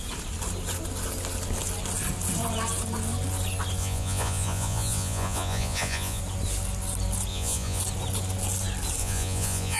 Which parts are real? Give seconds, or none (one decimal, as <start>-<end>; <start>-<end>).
0.0-3.8; 6.2-7.3; 7.8-9.0